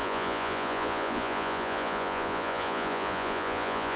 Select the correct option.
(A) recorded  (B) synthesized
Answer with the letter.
B